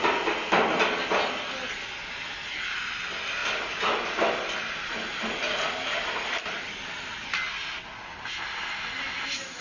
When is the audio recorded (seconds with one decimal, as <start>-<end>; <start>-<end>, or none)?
0.0-9.6